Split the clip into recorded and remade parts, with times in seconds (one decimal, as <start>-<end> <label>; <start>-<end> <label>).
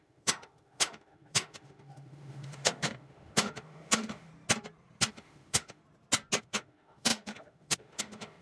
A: 0.0-4.3 remade; 4.3-5.1 recorded; 5.1-5.8 remade; 5.8-6.4 recorded; 6.4-8.4 remade